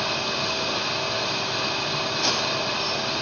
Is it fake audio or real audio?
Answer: real